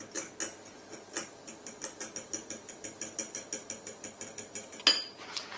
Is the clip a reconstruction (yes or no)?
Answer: no